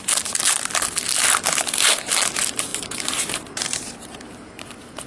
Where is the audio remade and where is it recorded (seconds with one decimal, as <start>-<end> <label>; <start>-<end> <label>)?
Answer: 0.0-2.7 recorded; 2.7-5.1 remade